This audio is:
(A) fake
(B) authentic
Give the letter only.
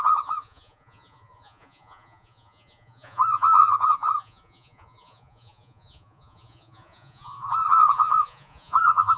A